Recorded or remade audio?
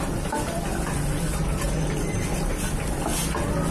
recorded